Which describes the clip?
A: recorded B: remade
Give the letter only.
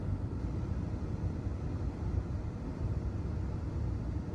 B